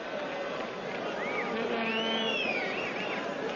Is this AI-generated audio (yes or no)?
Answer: no